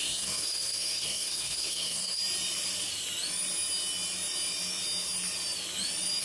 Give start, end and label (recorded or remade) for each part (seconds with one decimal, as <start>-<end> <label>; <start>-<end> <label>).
0.0-2.2 remade; 2.2-6.2 recorded